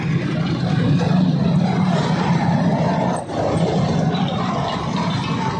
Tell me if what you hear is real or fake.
real